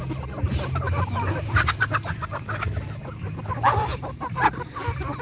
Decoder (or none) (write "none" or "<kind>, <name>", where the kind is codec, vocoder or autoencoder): none